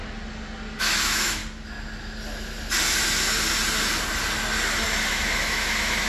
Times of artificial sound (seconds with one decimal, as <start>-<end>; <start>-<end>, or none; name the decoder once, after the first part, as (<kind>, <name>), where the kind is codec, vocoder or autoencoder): 0.8-1.4 (autoencoder, DAC-VAE); 5.1-6.1